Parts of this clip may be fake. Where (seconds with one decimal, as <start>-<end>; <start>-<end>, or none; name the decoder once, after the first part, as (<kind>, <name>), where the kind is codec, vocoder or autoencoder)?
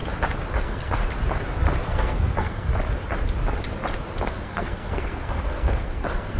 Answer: 0.6-1.0 (codec, SNAC); 1.8-2.7; 4.3-6.4